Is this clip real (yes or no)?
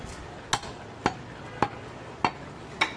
yes